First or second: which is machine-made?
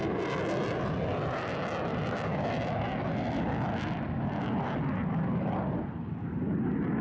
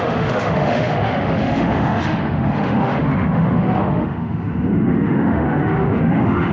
second